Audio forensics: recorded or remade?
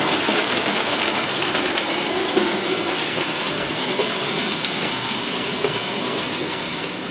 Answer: remade